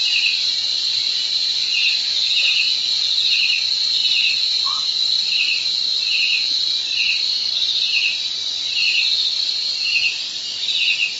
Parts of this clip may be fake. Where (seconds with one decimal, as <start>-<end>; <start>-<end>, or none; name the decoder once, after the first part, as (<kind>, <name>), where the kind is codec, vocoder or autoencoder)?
none